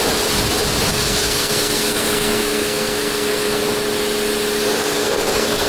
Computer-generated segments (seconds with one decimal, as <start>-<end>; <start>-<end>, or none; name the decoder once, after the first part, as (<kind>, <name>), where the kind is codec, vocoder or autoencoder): 0.9-3.6 (codec, SNAC); 4.8-5.7